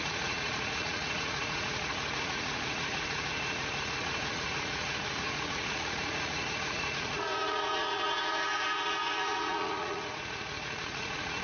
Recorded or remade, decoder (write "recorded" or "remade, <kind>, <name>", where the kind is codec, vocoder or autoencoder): remade, vocoder, Vocos